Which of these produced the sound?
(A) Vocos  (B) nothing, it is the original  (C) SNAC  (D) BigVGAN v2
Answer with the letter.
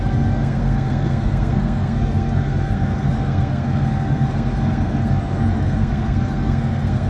C